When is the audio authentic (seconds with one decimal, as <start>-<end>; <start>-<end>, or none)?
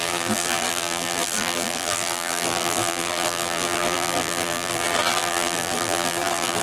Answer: none